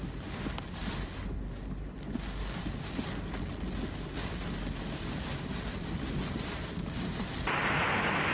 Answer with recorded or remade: recorded